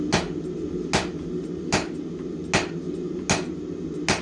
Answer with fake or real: real